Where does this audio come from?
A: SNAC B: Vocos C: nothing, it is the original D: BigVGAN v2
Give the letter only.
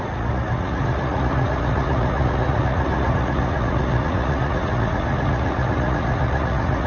B